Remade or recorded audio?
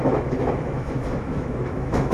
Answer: remade